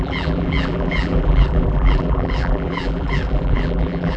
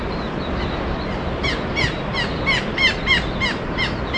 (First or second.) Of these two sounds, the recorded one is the second